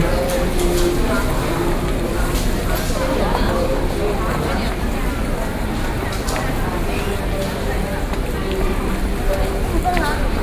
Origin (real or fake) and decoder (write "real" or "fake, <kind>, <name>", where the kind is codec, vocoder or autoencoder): real